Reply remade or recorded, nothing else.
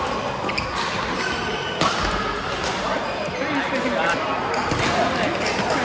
recorded